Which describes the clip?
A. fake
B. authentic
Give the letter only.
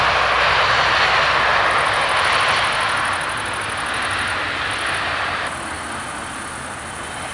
B